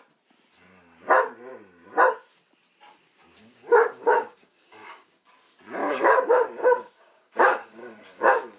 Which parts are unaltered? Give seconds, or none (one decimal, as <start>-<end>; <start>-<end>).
0.0-3.4; 5.3-5.8